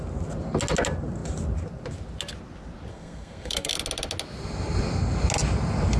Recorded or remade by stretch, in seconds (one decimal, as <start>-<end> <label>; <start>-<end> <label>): 0.0-2.9 recorded; 2.9-3.7 remade; 3.7-6.0 recorded